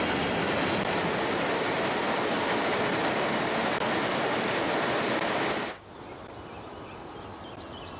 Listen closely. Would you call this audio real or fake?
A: real